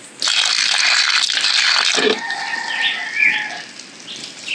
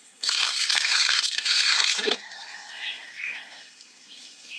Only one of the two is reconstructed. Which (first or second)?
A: second